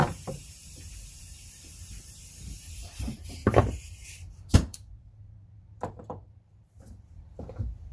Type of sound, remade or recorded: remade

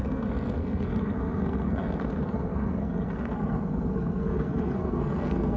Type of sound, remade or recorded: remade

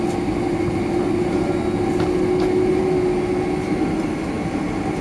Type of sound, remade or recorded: recorded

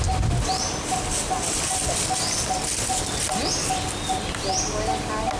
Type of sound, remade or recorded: recorded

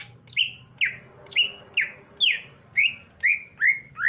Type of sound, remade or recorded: recorded